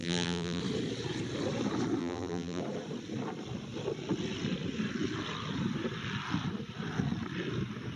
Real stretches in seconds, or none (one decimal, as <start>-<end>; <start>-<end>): 0.6-2.0; 2.6-8.0